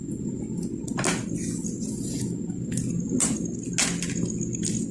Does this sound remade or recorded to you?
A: recorded